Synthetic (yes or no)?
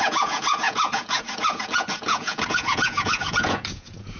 yes